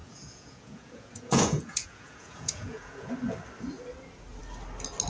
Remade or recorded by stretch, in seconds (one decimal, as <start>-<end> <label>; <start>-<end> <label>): 0.0-3.1 remade; 3.1-5.1 recorded

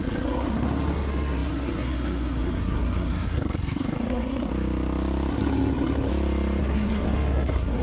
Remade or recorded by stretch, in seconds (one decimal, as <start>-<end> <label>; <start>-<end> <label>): 0.0-4.5 remade; 4.5-5.3 recorded; 5.3-6.1 remade; 6.1-6.6 recorded; 6.6-7.8 remade

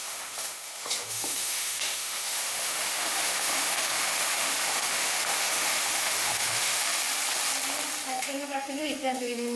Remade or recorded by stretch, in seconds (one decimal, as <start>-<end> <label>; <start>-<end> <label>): 0.0-7.0 remade; 7.0-8.1 recorded; 8.1-9.6 remade

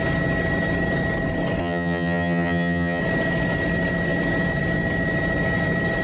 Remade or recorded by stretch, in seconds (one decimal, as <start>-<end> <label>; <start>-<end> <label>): 0.0-1.6 recorded; 1.6-3.0 remade; 3.0-6.0 recorded

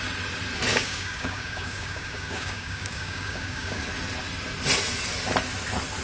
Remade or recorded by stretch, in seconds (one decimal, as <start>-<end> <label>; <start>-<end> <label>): 0.0-0.7 recorded; 0.7-3.8 remade; 3.8-6.0 recorded

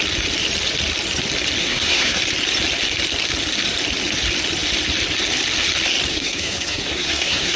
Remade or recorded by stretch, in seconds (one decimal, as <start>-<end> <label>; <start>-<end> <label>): 0.0-1.6 recorded; 1.6-2.2 remade; 2.2-6.1 recorded; 6.1-7.6 remade

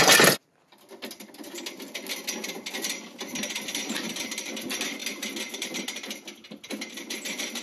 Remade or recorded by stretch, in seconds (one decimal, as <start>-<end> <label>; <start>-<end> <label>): 0.0-7.6 recorded

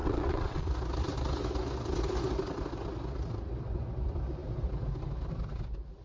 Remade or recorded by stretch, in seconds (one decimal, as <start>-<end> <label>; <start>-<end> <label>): 0.0-0.7 remade; 0.7-6.0 recorded